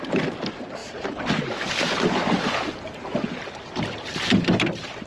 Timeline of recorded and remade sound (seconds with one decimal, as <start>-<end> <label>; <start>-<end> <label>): 0.0-5.1 recorded